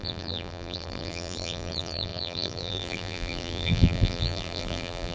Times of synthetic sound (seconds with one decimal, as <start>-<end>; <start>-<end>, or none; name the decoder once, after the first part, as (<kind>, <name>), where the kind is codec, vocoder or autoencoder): 0.0-5.1 (vocoder, BigVGAN v2)